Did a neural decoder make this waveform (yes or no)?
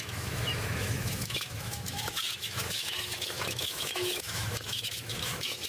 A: yes